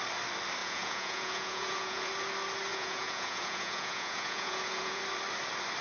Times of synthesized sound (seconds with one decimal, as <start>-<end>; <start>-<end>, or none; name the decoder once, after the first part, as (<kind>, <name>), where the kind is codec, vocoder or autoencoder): 0.6-2.1 (vocoder, Vocos); 2.7-5.0